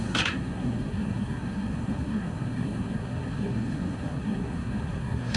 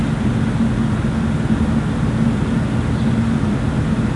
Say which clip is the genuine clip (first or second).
second